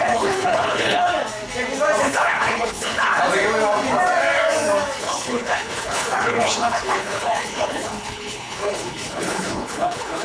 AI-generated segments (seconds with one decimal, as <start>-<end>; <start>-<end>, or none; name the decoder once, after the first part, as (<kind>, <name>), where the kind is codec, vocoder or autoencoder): 0.0-1.1 (codec, HILCodec); 2.0-3.1; 5.0-10.2